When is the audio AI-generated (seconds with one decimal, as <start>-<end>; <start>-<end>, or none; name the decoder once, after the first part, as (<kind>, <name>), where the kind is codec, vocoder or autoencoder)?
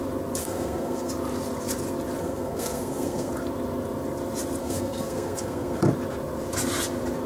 0.4-1.1 (codec, SNAC); 2.2-3.3; 4.6-5.8